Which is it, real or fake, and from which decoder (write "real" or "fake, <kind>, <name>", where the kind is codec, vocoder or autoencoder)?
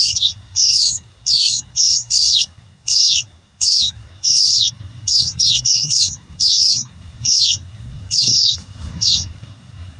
fake, codec, SNAC